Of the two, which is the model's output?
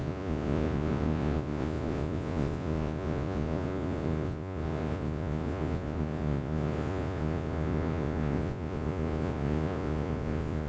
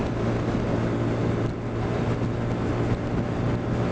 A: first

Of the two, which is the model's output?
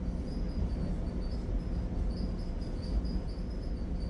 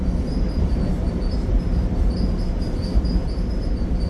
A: second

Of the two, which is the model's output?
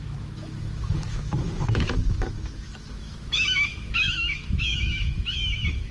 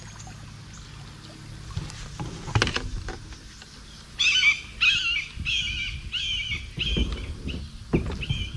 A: first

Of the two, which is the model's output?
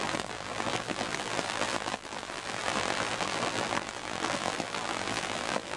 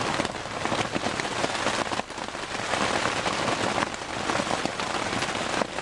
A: first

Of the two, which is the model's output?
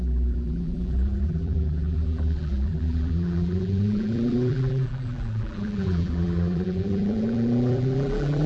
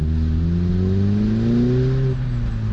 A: first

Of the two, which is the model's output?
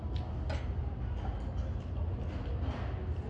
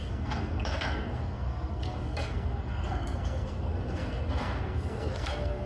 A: second